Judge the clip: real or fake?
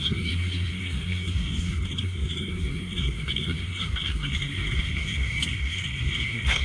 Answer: fake